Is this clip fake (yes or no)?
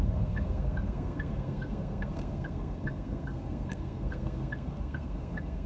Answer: yes